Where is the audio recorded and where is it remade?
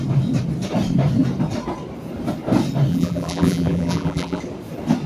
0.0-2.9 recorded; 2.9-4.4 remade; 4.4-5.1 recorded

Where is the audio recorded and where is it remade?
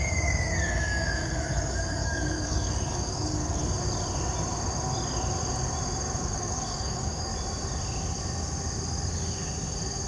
0.0-3.6 remade; 3.6-6.2 recorded; 6.2-7.3 remade; 7.3-10.1 recorded